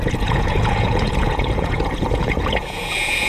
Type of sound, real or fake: fake